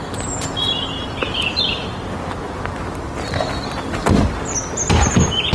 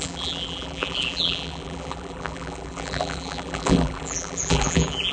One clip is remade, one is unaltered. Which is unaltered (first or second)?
first